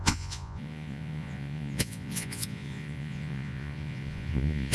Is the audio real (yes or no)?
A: no